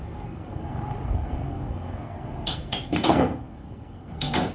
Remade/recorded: remade